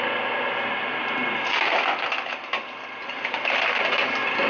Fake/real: real